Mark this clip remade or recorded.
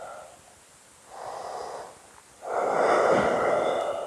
recorded